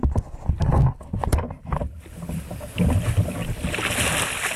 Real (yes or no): yes